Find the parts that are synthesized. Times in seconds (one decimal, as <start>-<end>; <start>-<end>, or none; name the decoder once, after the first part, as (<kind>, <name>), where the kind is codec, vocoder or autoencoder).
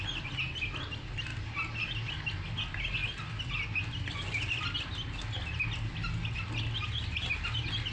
none